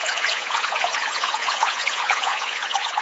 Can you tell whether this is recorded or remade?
remade